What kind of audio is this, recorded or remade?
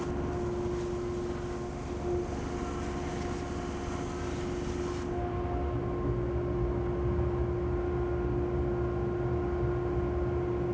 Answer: recorded